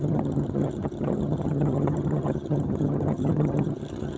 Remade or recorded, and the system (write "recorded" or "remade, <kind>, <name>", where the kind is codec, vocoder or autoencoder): remade, vocoder, HiFi-GAN